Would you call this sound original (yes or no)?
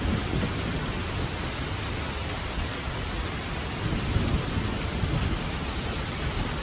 yes